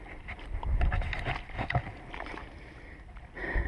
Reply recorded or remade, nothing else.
recorded